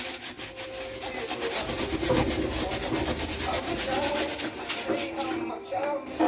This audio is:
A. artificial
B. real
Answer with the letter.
B